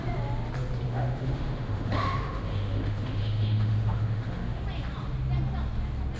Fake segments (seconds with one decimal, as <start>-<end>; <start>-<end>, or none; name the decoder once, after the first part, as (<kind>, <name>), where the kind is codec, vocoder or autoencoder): 0.9-4.6 (autoencoder, DAC-VAE)